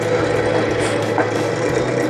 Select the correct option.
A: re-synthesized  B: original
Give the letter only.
B